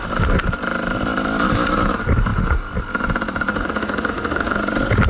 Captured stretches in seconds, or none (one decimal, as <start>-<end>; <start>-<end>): 0.0-3.5; 4.6-5.1